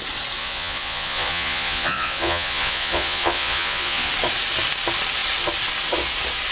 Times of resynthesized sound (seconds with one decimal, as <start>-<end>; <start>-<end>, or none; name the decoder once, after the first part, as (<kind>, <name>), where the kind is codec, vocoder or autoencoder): 0.4-4.1 (vocoder, Vocos)